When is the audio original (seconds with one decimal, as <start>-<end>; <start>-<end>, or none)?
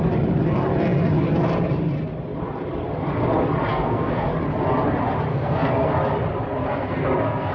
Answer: 0.0-3.7; 4.3-5.3; 5.9-6.6